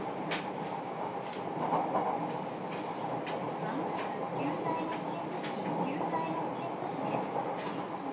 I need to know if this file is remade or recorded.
recorded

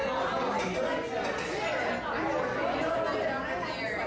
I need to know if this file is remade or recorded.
recorded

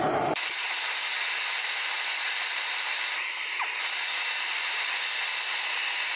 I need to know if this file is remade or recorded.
recorded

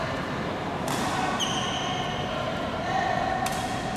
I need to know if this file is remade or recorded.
recorded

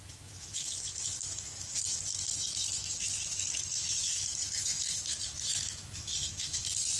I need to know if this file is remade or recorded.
remade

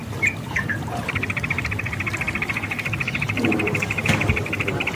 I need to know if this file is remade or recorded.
remade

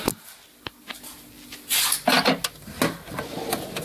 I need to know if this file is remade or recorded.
recorded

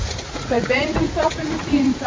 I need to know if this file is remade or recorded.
remade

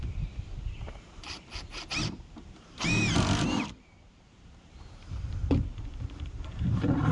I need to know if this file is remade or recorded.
remade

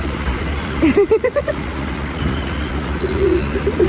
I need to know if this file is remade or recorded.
remade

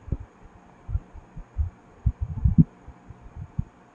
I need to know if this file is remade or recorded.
recorded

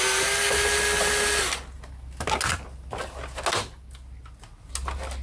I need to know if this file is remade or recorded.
recorded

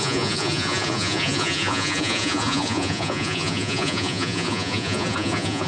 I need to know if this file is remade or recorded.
remade